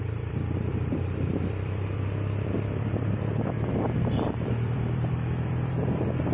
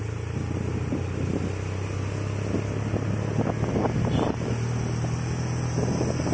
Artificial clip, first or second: first